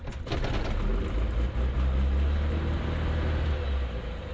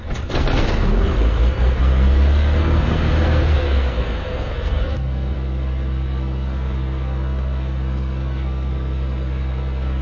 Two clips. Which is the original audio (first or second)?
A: first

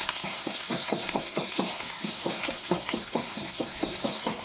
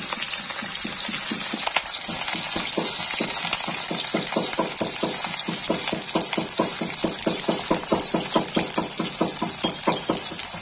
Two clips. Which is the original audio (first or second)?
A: second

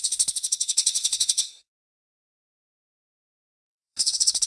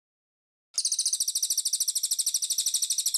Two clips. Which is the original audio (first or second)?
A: second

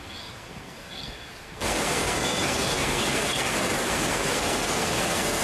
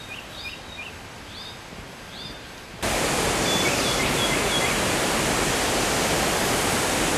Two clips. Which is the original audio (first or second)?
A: second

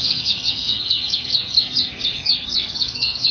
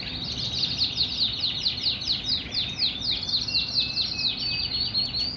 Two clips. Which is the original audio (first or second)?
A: second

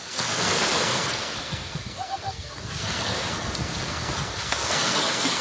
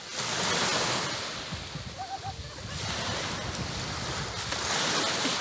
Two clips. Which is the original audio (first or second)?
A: second